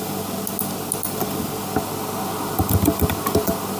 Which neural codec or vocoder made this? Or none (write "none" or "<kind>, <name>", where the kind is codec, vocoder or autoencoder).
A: none